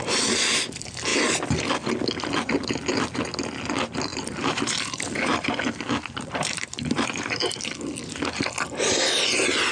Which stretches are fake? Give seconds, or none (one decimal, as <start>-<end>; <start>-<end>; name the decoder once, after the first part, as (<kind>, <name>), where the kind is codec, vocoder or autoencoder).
4.1-7.7 (vocoder, BigVGAN v2)